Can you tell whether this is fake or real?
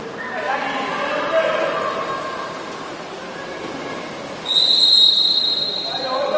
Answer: real